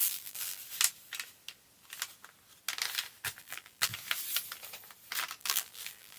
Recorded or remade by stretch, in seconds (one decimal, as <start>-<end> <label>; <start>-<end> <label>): 0.0-0.6 remade; 0.6-3.4 recorded; 3.4-3.9 remade; 3.9-5.4 recorded; 5.4-6.2 remade